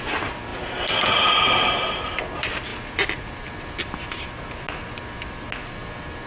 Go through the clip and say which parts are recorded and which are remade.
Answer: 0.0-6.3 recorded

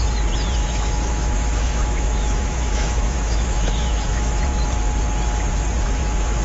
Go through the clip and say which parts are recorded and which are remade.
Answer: 0.0-0.6 recorded; 0.6-4.4 remade; 4.4-6.4 recorded